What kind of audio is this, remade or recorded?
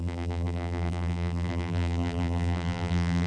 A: remade